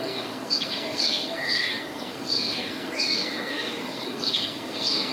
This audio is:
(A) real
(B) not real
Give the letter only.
B